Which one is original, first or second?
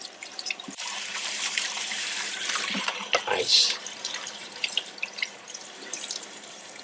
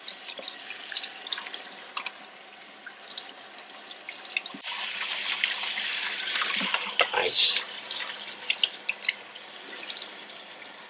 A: second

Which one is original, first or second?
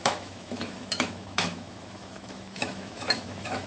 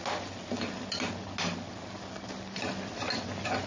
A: second